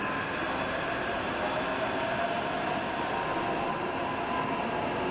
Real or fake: real